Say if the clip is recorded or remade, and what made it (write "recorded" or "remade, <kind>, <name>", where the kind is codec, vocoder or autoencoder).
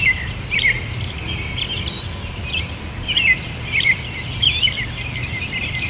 remade, vocoder, BigVGAN v2